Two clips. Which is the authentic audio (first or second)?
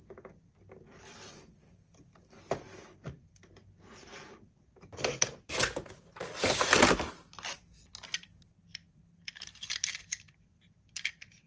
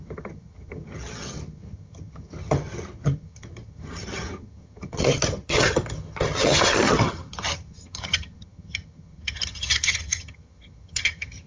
first